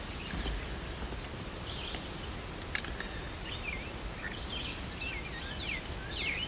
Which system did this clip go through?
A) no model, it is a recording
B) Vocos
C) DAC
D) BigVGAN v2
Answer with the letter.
A